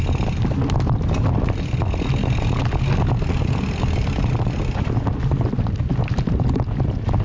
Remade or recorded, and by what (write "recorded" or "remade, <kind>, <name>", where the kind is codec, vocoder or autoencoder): recorded